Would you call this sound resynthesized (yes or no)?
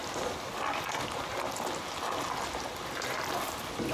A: no